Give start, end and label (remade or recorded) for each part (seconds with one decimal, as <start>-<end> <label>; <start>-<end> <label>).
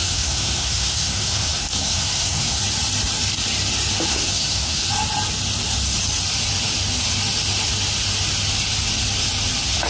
0.0-2.6 remade; 2.6-4.1 recorded; 4.1-4.9 remade; 4.9-9.9 recorded